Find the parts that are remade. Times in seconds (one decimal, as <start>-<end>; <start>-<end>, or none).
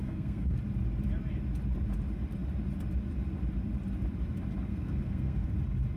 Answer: 0.0-0.5; 4.7-5.5